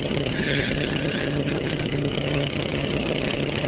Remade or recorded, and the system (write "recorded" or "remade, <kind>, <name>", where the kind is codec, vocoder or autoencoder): remade, vocoder, HiFi-GAN